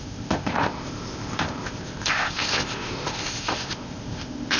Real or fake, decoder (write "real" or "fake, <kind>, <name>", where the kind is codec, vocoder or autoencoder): fake, codec, ZipCodec